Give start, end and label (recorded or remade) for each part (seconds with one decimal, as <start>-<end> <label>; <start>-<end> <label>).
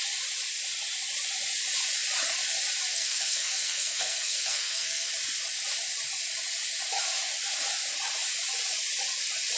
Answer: 0.0-2.9 recorded; 2.9-5.1 remade; 5.1-9.6 recorded